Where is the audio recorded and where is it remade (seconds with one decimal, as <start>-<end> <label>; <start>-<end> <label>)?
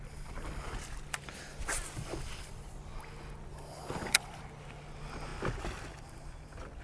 0.0-3.5 recorded; 3.5-4.4 remade; 4.4-6.8 recorded